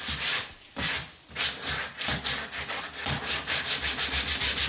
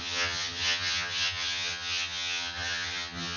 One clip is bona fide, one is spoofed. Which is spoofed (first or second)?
second